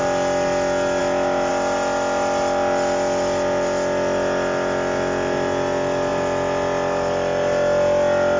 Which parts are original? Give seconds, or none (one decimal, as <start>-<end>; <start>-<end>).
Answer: 0.0-8.4